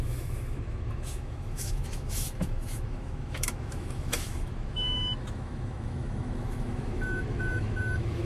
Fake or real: fake